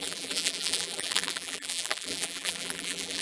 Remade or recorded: remade